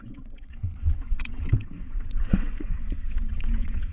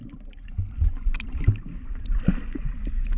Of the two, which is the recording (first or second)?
second